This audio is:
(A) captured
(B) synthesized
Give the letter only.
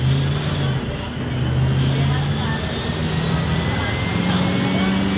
A